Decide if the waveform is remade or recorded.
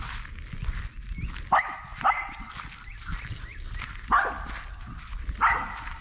recorded